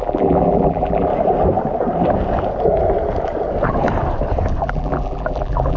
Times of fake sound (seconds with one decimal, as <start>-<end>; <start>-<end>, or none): 0.0-1.1; 4.6-5.8